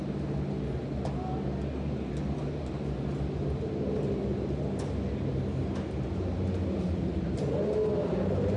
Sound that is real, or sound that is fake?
real